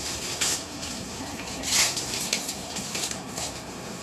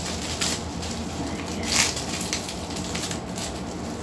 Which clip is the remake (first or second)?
first